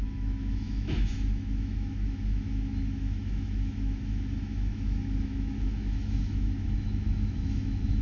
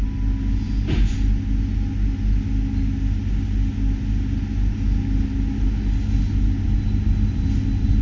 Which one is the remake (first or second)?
first